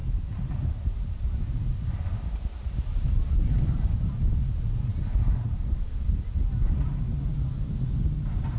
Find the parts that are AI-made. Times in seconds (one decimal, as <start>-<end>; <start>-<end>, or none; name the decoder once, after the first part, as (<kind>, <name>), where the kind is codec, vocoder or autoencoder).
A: none